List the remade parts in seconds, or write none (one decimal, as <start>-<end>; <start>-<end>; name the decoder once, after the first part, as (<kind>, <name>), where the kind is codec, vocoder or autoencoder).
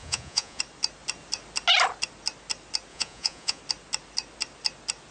0.0-0.6 (vocoder, Vocos); 2.9-3.6